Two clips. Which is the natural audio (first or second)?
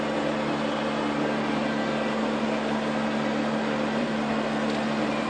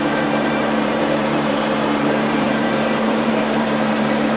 first